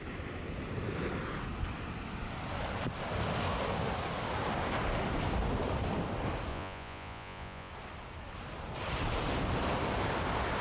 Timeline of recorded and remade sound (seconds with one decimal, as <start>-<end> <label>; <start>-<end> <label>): 0.0-6.5 recorded; 6.5-7.7 remade; 7.7-10.6 recorded